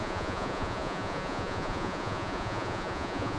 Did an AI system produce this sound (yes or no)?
yes